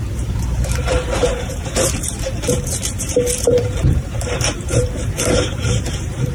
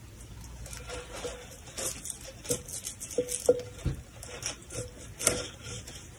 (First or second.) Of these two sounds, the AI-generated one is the first